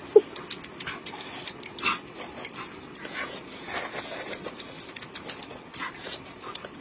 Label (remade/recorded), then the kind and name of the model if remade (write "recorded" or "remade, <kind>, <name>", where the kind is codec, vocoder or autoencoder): recorded